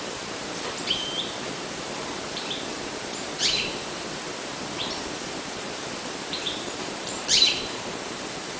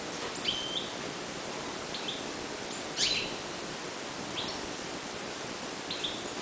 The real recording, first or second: second